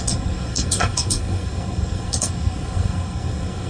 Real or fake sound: fake